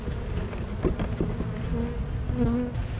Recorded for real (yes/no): yes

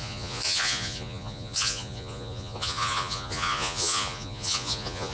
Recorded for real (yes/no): no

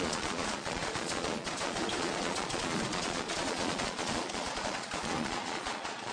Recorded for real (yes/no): no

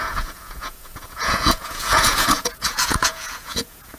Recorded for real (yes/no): no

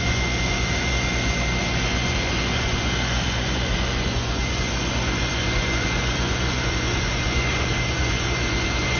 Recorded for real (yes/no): no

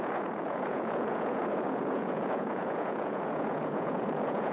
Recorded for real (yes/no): no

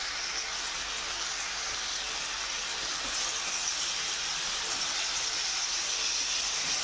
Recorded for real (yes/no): yes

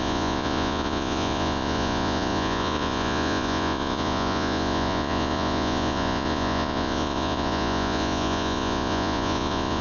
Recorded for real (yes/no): no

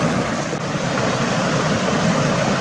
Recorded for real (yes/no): yes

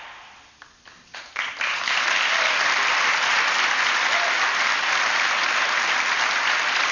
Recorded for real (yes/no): yes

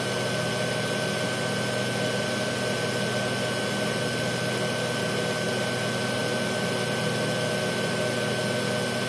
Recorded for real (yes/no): yes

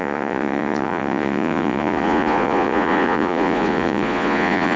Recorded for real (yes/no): no